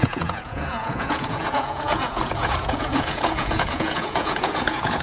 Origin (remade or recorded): remade